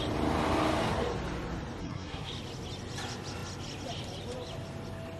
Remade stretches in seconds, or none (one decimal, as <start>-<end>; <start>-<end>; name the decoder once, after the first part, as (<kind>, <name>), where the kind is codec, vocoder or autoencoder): 1.8-2.3 (codec, SNAC)